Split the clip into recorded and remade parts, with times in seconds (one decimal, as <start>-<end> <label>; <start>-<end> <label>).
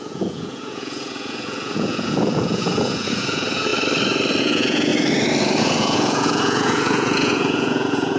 0.0-3.7 remade; 3.7-4.4 recorded; 4.4-4.9 remade; 4.9-5.6 recorded; 5.6-8.2 remade